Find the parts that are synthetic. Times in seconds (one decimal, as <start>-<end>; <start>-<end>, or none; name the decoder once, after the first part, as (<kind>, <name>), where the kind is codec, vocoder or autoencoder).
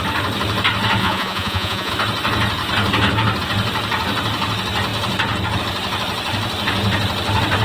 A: 1.0-1.9 (vocoder, Vocos)